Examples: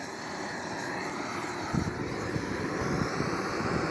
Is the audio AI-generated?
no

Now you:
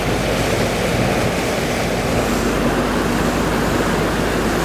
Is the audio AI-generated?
no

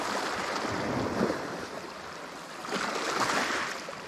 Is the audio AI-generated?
no